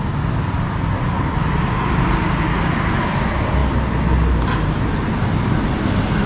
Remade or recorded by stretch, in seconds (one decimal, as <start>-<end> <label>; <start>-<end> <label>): 0.0-6.3 recorded